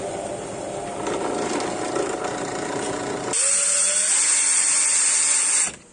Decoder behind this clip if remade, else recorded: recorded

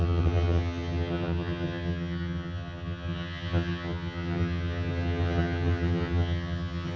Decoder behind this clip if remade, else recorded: remade, vocoder, HiFi-GAN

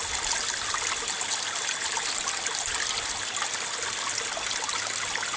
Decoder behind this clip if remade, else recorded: recorded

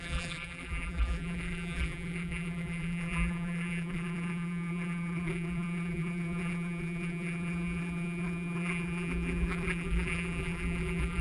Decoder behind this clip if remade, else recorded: remade, vocoder, BigVGAN v2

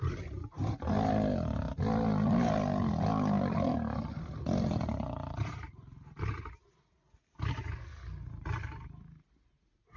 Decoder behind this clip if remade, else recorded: recorded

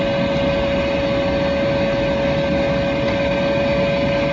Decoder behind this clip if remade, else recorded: recorded